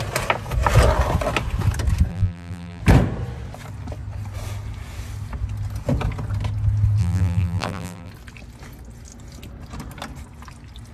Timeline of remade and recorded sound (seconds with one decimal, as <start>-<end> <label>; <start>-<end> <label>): 0.0-2.1 recorded; 2.1-2.8 remade; 2.8-7.0 recorded; 7.0-8.1 remade; 8.1-10.9 recorded